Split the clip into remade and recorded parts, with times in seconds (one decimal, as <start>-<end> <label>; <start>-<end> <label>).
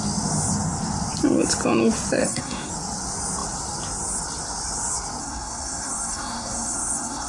0.0-2.2 recorded; 2.2-2.7 remade; 2.7-5.2 recorded; 5.2-7.3 remade